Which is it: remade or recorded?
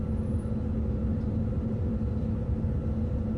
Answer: recorded